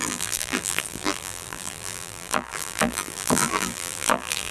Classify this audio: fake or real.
fake